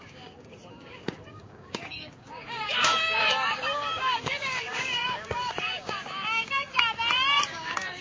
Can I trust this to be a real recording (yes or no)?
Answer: no